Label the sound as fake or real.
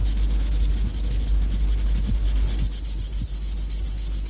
real